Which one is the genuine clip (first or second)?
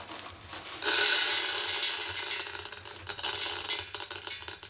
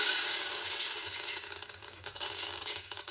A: first